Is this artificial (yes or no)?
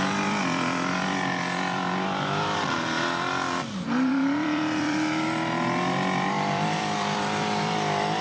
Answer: yes